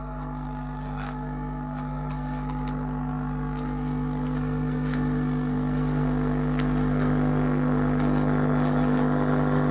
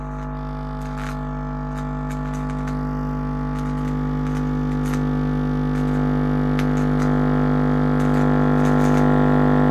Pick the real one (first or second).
second